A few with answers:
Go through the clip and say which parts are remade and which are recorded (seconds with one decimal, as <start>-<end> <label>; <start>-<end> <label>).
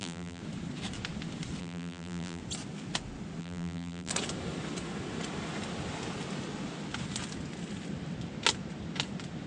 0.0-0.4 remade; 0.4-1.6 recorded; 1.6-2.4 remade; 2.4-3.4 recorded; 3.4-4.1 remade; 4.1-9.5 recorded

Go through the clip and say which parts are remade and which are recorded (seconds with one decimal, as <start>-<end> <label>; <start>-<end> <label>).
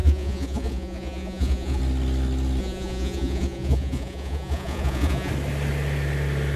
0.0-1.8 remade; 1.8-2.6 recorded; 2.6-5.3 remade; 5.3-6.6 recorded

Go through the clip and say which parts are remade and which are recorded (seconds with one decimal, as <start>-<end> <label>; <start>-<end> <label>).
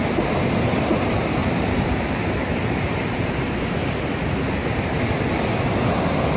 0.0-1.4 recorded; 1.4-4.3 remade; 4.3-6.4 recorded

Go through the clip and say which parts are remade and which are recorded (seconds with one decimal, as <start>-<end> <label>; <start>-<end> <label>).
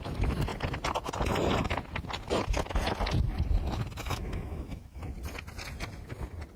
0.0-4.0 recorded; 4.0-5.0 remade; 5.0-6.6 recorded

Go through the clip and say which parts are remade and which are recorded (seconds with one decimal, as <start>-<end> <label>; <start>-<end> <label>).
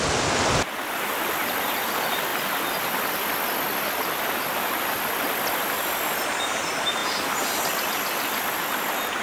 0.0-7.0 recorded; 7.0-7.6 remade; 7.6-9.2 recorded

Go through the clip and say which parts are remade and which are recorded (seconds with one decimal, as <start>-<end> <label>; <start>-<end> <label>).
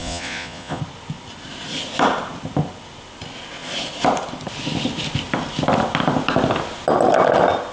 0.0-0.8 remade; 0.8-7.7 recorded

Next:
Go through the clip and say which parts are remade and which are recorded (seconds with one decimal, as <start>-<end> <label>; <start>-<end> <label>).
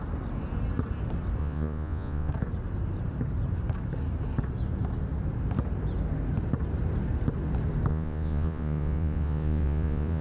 0.0-1.4 recorded; 1.4-2.3 remade; 2.3-7.9 recorded; 7.9-10.2 remade